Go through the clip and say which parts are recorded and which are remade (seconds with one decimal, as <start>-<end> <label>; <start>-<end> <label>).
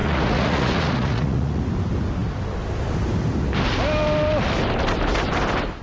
0.0-1.6 remade; 1.6-5.8 recorded